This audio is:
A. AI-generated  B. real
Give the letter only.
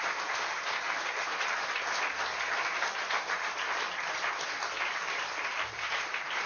B